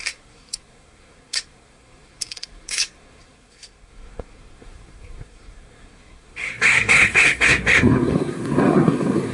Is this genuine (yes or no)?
no